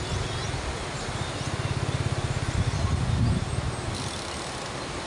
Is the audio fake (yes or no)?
no